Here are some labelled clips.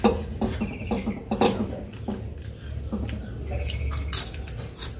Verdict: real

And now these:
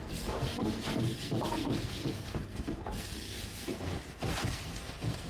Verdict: fake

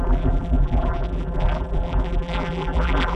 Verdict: fake